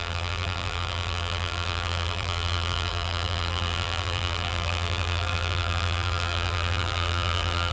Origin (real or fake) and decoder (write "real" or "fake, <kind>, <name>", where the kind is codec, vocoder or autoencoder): fake, vocoder, BigVGAN v2